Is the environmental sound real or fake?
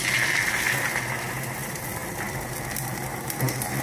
real